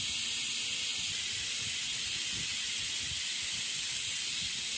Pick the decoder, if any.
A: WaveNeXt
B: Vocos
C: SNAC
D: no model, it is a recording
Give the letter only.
D